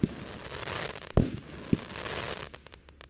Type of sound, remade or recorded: remade